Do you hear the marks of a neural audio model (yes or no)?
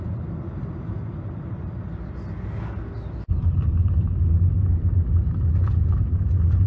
no